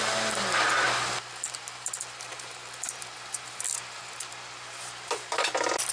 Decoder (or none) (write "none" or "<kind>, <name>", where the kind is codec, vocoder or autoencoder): none